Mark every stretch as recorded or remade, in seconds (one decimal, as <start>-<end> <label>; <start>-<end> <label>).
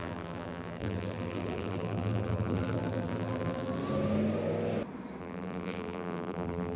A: 0.0-3.8 remade; 3.8-5.2 recorded; 5.2-6.8 remade